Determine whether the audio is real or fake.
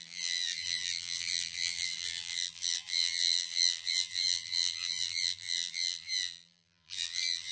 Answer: fake